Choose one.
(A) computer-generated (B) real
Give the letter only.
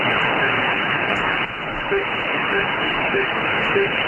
A